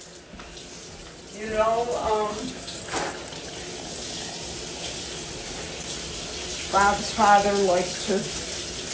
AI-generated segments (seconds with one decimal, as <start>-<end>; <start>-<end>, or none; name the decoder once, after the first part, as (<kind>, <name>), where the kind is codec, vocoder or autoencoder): 2.3-2.8 (codec, SNAC)